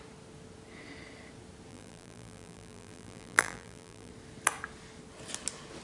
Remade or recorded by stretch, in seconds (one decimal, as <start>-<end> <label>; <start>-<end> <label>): 0.0-1.7 recorded; 1.7-4.1 remade; 4.1-5.8 recorded